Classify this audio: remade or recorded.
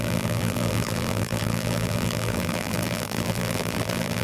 remade